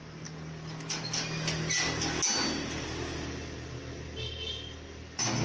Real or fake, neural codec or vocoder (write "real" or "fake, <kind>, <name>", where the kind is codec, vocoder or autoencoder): real